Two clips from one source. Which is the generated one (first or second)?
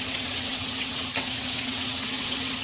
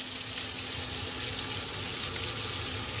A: first